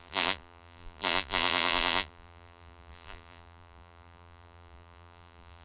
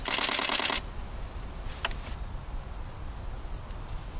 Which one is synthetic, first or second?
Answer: first